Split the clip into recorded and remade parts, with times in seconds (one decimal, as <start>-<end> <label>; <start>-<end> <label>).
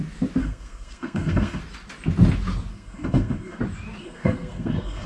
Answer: 0.0-0.4 recorded; 0.4-1.6 remade; 1.6-2.7 recorded; 2.7-3.6 remade; 3.6-4.0 recorded; 4.0-5.1 remade